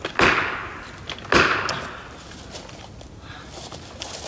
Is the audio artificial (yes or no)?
no